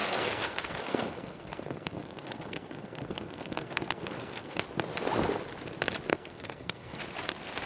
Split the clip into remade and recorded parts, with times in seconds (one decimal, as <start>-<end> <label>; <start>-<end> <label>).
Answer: 0.0-4.6 remade; 4.6-6.1 recorded; 6.1-7.0 remade; 7.0-7.7 recorded